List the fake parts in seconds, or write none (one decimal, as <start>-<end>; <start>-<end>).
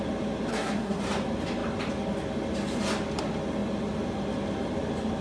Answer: 0.5-1.0